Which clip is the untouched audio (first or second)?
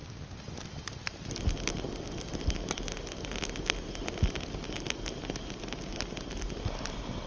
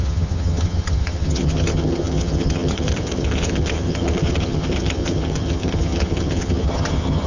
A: first